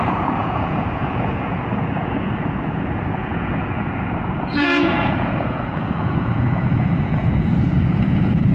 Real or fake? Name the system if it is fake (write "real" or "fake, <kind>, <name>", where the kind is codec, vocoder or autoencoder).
fake, vocoder, Vocos